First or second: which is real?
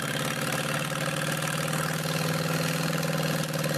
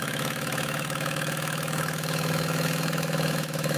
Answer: first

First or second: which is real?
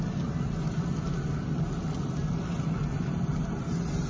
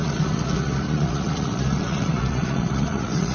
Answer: first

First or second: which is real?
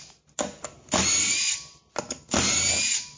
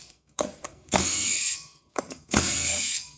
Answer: first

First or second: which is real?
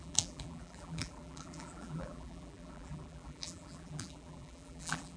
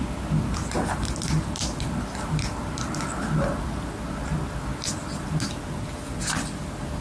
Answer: second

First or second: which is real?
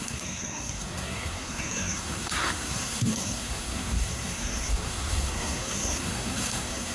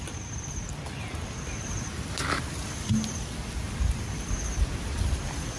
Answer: second